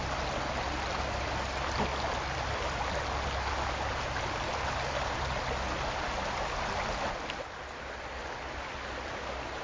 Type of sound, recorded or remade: recorded